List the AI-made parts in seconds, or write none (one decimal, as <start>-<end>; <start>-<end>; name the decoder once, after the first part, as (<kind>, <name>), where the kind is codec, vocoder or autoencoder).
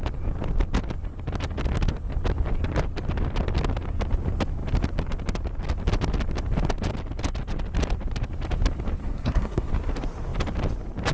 9.0-9.7 (codec, SNAC)